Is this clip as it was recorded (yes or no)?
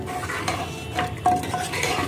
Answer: yes